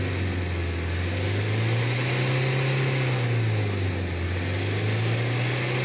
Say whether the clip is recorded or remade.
recorded